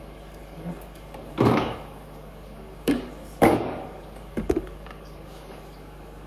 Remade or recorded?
remade